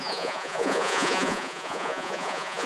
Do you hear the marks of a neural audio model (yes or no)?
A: yes